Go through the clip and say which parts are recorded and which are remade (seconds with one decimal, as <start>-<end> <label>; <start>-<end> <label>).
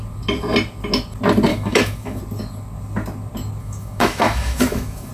0.0-1.5 recorded; 1.5-2.2 remade; 2.2-3.6 recorded; 3.6-5.1 remade